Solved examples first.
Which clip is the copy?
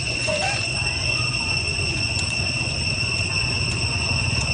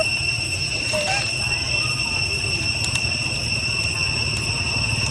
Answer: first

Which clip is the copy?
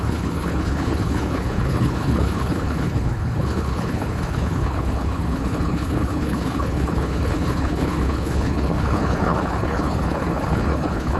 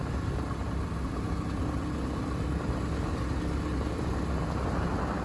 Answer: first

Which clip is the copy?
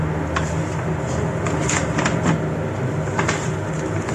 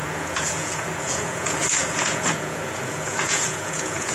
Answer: second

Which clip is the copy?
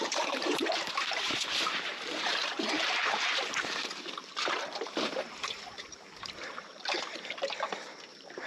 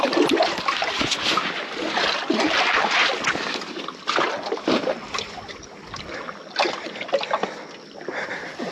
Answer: first